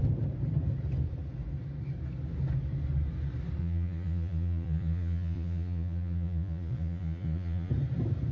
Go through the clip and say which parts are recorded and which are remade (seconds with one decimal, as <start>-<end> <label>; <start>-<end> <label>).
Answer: 0.0-3.6 recorded; 3.6-7.7 remade; 7.7-8.3 recorded